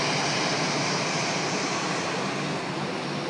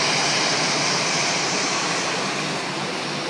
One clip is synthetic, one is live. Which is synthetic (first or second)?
second